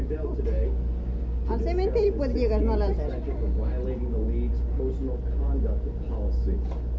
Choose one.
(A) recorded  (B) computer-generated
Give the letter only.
A